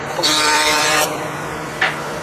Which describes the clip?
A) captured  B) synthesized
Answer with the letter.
B